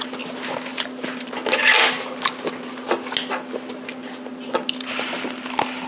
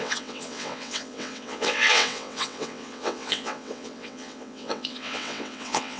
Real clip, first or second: first